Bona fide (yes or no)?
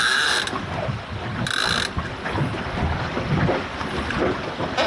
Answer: yes